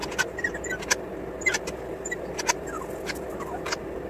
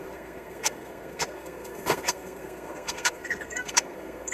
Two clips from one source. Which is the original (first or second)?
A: first